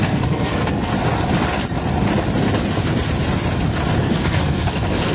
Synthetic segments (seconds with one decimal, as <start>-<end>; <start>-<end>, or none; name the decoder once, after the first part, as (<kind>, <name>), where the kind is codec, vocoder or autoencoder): 0.0-0.9 (codec, SNAC); 4.0-5.1